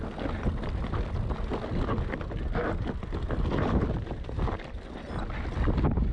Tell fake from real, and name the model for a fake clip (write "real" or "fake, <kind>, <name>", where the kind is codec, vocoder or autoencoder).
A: real